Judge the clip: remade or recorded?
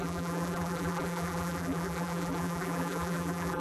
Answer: remade